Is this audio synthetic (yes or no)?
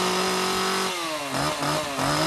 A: no